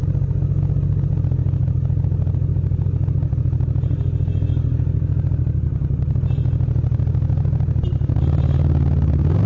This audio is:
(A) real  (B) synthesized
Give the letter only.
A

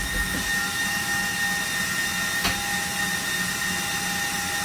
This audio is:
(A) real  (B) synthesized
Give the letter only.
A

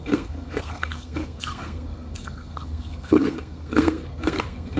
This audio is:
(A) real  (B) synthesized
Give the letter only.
B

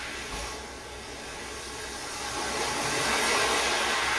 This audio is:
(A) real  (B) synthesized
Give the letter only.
A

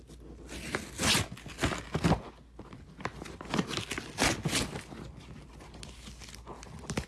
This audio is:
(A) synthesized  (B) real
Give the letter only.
B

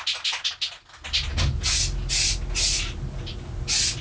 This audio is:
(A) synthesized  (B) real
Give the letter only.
B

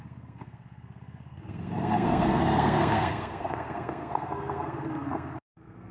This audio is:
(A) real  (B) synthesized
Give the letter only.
B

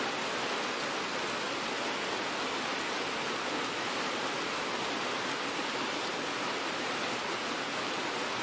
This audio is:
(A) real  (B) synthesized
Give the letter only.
A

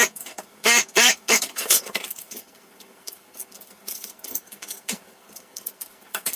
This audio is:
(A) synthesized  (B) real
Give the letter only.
A